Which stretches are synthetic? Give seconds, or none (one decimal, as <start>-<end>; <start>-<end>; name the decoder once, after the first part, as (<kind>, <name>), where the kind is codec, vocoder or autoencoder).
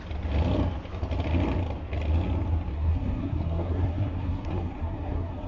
2.7-5.5 (codec, SNAC)